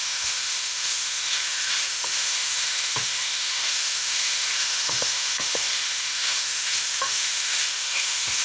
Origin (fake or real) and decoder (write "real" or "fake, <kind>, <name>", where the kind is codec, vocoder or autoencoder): fake, autoencoder, DAC-VAE